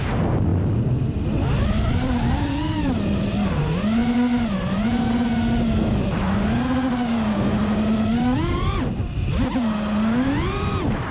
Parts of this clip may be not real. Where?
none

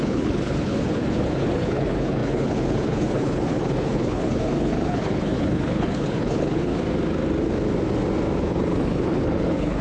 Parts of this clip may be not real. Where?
0.0-6.7 (codec, HILCodec); 8.4-9.8

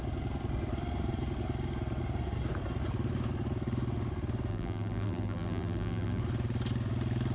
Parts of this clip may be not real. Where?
4.5-6.2 (vocoder, BigVGAN v2)

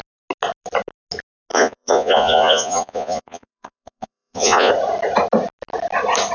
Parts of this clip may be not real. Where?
1.5-4.7 (vocoder, Vocos)